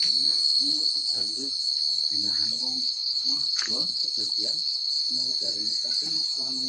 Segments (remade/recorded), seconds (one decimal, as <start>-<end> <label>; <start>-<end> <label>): 0.0-0.4 recorded; 0.4-1.5 remade; 1.5-2.8 recorded; 2.8-4.9 remade; 4.9-6.7 recorded